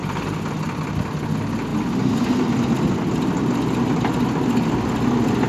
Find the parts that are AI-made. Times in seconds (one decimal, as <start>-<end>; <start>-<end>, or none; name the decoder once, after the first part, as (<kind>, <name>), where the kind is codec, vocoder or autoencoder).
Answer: none

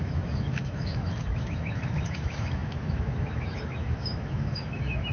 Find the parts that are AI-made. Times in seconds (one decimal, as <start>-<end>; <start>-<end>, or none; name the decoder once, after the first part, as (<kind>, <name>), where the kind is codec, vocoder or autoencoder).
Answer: 0.0-5.1 (autoencoder, DAC-VAE)

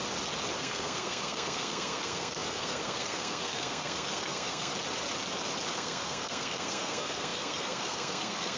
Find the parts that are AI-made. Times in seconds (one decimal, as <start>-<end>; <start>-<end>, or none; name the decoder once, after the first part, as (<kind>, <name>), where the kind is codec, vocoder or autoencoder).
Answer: 0.6-4.7 (codec, SNAC); 5.7-8.6

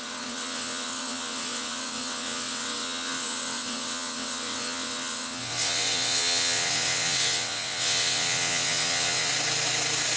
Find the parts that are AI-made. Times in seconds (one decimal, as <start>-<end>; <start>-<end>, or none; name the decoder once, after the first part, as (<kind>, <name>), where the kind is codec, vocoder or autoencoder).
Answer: 0.0-9.3 (vocoder, WaveNeXt)

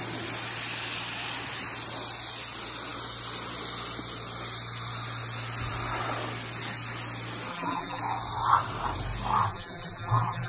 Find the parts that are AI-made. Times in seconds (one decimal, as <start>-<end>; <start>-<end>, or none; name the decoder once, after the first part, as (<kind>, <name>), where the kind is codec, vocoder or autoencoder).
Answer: 7.5-8.0 (vocoder, BigVGAN v2); 9.5-10.5

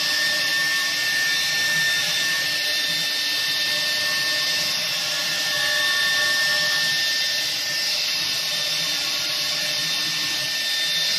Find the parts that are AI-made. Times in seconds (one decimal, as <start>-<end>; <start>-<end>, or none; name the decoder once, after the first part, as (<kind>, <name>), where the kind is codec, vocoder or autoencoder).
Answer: 0.0-0.5 (vocoder, BigVGAN v2); 2.0-3.0; 7.9-9.8